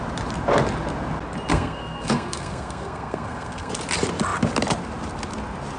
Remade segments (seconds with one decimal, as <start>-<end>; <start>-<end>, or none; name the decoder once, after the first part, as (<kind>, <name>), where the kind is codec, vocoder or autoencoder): 1.5-3.7 (codec, SNAC)